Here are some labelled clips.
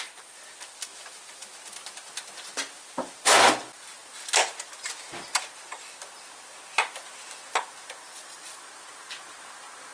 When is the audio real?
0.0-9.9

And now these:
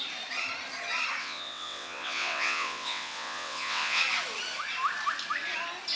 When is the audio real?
0.0-1.2; 4.0-6.0

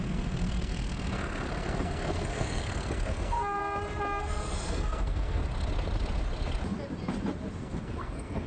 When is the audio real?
3.6-4.2; 5.4-7.6